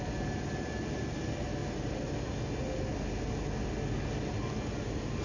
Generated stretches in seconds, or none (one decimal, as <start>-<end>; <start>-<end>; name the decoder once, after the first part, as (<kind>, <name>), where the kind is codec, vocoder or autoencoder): none